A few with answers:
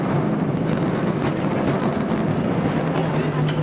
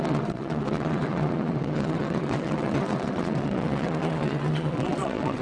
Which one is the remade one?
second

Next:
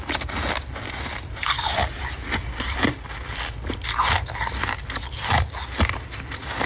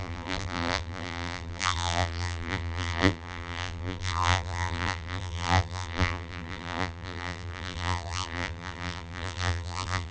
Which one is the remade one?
second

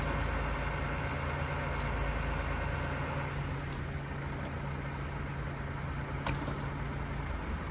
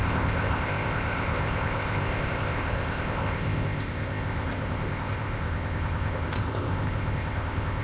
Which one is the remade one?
second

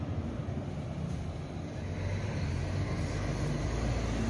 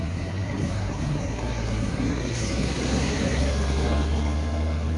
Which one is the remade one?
second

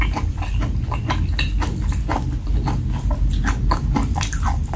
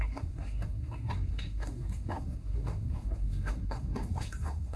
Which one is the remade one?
second